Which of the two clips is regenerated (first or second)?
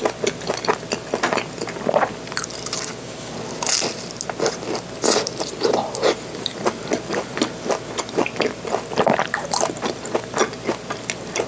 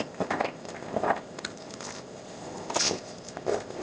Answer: second